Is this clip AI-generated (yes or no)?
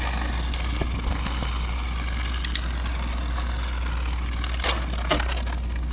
no